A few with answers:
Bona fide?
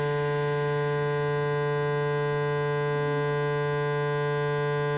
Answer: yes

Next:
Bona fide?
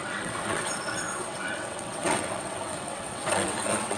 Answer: no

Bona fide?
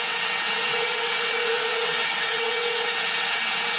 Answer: no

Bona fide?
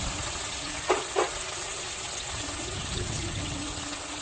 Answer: no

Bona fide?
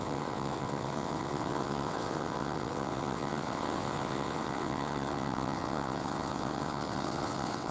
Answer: no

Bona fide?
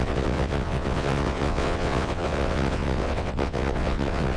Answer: no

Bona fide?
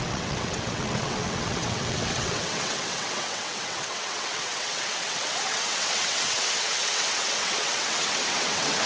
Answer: no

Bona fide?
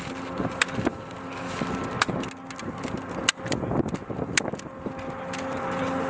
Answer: yes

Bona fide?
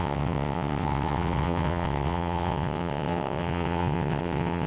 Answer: no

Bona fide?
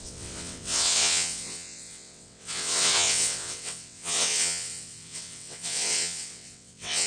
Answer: no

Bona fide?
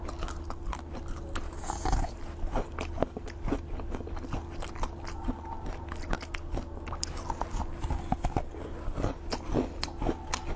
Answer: yes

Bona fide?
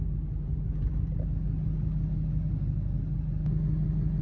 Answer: yes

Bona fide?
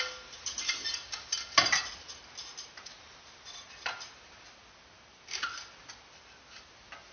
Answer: yes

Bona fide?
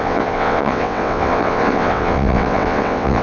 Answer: no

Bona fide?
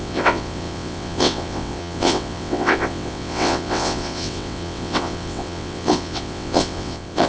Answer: no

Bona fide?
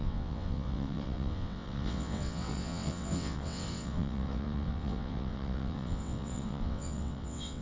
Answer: no